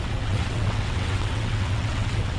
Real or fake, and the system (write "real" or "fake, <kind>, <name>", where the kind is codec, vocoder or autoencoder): fake, vocoder, WaveNeXt